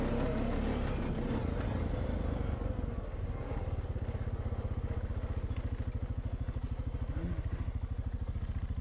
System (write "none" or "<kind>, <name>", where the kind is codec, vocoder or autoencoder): none